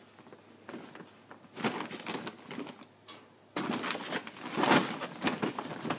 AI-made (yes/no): no